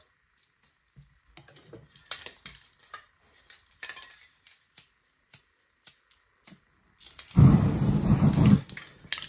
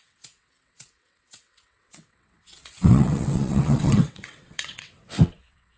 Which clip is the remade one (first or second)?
second